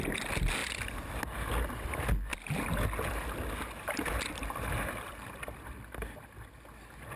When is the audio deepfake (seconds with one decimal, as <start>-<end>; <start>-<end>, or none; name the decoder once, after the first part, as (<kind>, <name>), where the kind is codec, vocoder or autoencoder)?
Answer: none